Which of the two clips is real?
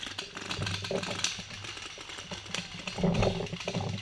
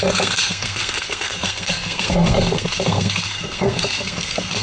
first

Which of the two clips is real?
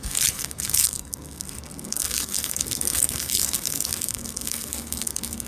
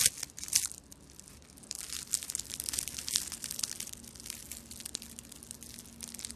second